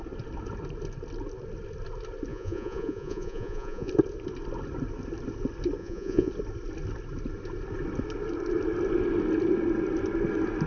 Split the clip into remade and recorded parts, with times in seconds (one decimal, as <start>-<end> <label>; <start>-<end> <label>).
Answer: 0.0-2.3 recorded; 2.3-3.9 remade; 3.9-5.8 recorded; 5.8-6.3 remade; 6.3-10.7 recorded